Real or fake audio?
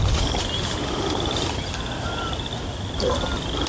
real